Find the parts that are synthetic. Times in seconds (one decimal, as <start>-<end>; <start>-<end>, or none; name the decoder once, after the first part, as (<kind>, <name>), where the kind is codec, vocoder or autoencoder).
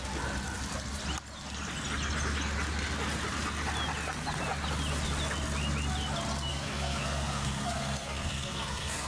6.5-9.1 (codec, SNAC)